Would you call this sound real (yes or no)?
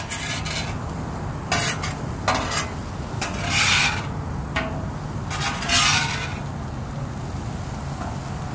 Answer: yes